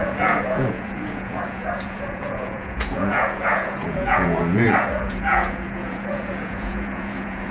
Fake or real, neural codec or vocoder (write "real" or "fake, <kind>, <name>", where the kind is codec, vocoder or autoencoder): fake, vocoder, Vocos